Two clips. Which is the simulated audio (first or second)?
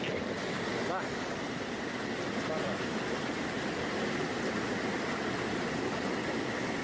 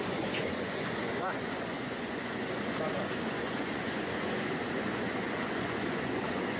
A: second